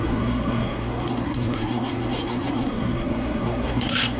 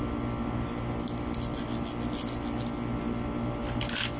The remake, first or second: first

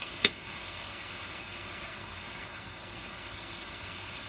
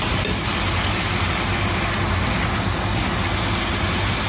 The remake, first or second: first